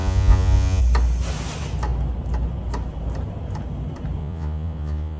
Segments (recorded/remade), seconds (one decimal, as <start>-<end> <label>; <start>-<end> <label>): 0.0-0.8 remade; 0.8-4.2 recorded; 4.2-5.2 remade